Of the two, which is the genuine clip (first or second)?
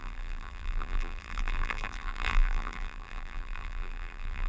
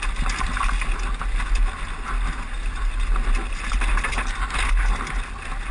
second